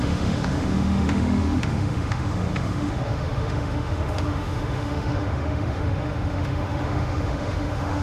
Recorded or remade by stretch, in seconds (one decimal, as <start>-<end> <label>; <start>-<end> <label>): 0.0-8.0 remade